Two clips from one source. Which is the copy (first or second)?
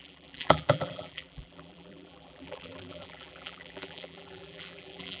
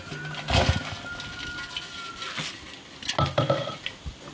first